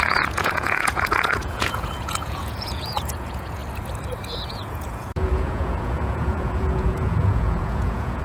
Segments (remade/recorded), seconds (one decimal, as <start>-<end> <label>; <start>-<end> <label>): 0.0-3.6 remade; 3.6-4.5 recorded; 4.5-8.2 remade